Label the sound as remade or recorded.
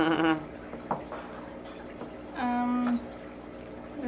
recorded